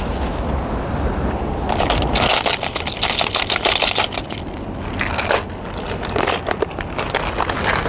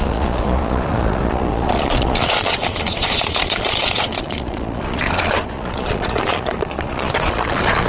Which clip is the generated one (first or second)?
second